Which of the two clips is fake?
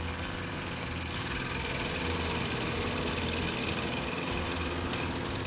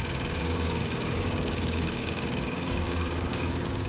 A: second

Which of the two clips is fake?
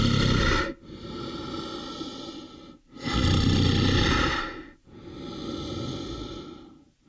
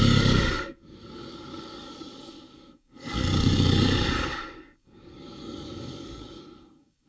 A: second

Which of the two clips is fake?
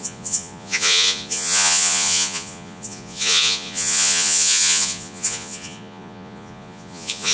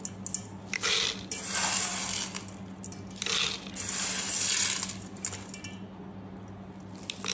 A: first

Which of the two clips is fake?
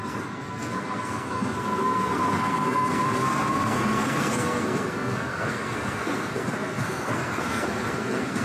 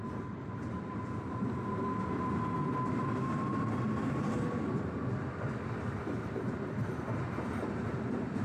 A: first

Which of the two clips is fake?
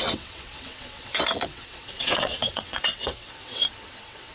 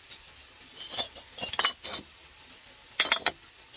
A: first